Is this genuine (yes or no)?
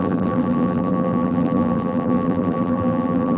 no